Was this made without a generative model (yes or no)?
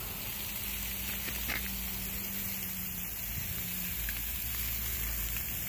yes